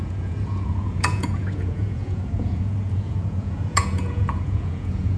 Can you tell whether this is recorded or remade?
remade